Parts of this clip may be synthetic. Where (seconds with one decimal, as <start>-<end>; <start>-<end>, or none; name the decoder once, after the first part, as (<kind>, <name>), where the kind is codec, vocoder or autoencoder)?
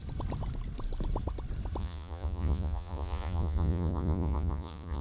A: 1.8-5.0 (vocoder, Vocos)